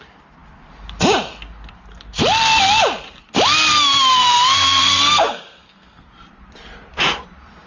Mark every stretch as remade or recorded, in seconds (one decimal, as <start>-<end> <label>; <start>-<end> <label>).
0.0-4.1 recorded; 4.1-6.1 remade; 6.1-7.7 recorded